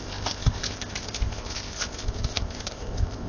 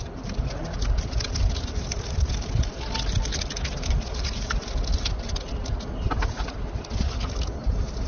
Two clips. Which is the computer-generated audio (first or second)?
first